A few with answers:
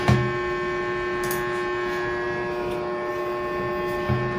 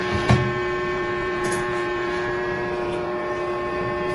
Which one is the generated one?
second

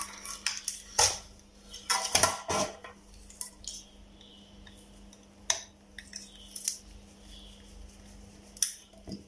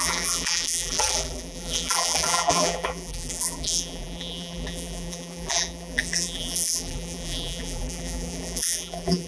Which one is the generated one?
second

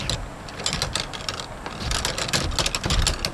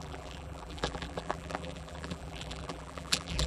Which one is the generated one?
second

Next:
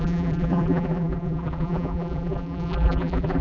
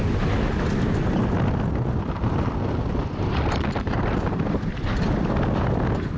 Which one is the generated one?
first